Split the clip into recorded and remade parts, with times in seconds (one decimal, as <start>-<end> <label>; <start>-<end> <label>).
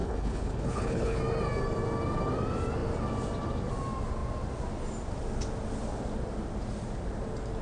0.0-1.2 remade; 1.2-7.6 recorded